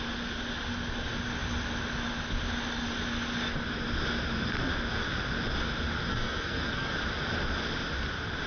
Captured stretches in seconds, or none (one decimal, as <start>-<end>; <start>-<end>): 0.0-6.1; 6.9-8.5